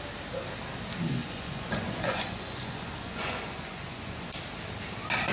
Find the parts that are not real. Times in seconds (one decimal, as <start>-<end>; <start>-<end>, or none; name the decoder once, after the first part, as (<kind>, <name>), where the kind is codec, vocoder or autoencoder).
1.2-4.3 (vocoder, Vocos)